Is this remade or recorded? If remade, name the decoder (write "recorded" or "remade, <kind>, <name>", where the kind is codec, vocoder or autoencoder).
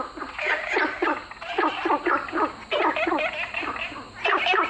recorded